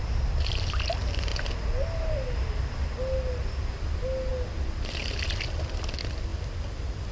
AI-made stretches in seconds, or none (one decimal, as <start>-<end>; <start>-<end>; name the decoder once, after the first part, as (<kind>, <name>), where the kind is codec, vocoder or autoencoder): none